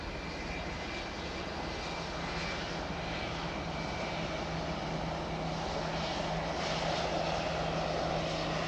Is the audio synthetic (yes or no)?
no